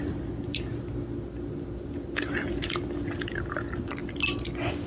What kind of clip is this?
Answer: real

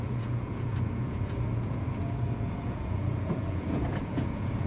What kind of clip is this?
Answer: fake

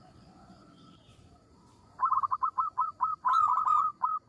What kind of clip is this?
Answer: fake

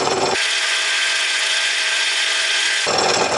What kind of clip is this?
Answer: fake